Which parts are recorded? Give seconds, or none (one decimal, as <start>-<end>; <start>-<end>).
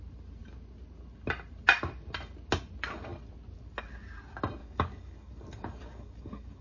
0.0-4.6